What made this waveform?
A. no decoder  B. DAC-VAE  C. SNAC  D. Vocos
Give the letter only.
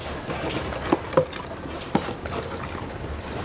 A